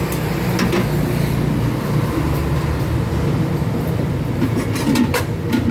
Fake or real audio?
real